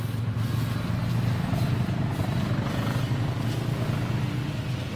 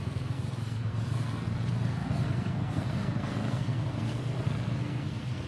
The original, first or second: first